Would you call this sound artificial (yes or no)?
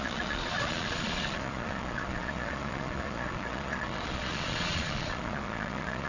yes